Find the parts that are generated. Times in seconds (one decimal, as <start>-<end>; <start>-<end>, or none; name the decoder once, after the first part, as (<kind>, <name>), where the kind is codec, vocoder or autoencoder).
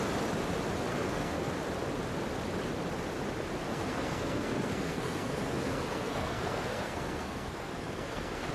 0.9-1.5 (codec, SNAC); 3.7-8.5